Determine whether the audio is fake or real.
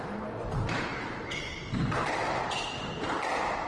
fake